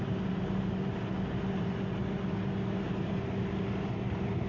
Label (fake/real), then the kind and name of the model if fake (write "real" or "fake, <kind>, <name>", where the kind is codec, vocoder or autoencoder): real